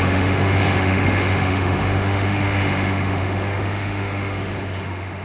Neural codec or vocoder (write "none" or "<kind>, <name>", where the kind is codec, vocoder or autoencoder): autoencoder, DAC-VAE